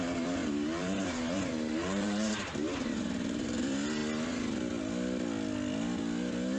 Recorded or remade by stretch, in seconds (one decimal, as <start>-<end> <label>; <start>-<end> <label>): 0.0-4.0 remade; 4.0-6.6 recorded

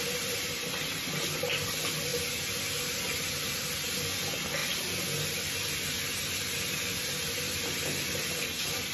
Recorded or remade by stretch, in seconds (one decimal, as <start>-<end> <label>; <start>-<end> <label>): 0.0-8.9 recorded

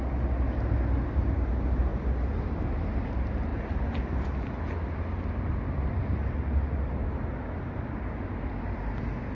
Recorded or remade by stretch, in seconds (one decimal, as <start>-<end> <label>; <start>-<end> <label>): 0.0-9.3 recorded